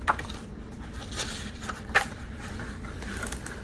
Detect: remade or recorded recorded